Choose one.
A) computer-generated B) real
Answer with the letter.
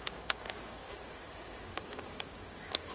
A